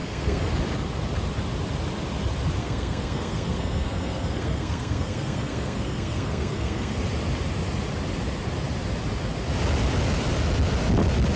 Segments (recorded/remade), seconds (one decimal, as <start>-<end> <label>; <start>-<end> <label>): 0.0-0.5 remade; 0.5-2.6 recorded; 2.6-7.0 remade; 7.0-11.4 recorded